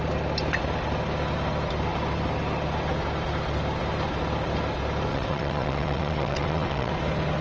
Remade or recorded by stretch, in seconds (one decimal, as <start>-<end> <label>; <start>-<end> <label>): 0.0-5.1 recorded; 5.1-6.9 remade; 6.9-7.4 recorded